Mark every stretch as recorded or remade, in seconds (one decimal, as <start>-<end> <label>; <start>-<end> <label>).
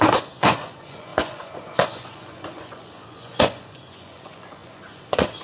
0.0-5.4 remade